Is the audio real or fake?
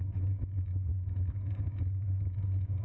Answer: fake